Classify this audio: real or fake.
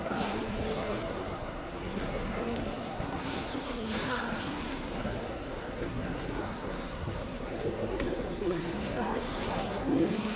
fake